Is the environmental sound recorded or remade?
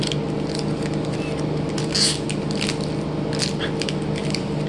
recorded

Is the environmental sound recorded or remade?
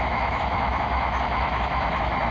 remade